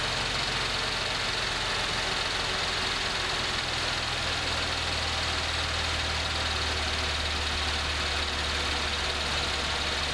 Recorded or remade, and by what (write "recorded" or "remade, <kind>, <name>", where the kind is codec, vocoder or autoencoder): recorded